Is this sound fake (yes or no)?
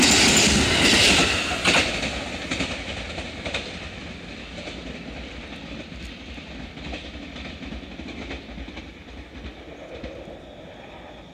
no